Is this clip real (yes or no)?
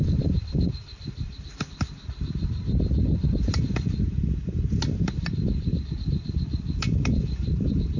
no